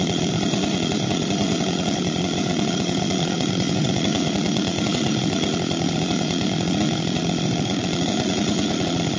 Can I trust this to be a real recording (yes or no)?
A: no